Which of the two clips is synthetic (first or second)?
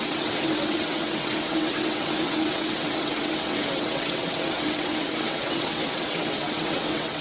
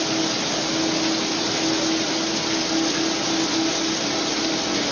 first